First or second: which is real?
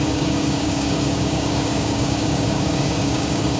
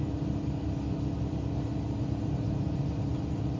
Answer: second